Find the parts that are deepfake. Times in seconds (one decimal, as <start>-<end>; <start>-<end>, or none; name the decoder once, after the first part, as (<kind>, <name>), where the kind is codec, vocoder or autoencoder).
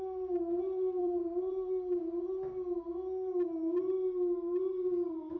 1.0-2.9 (vocoder, BigVGAN v2)